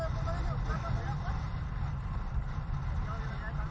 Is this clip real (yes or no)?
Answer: yes